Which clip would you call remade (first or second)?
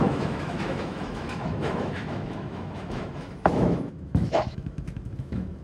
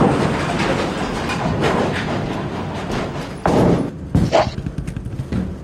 first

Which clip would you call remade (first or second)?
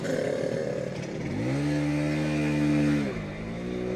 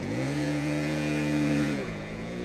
second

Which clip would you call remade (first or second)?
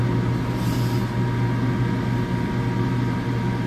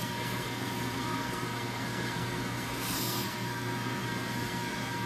second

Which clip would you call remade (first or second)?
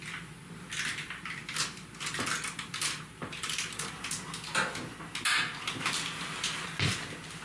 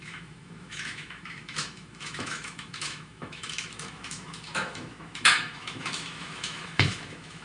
second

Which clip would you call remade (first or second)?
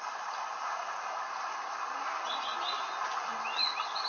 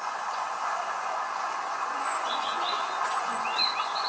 second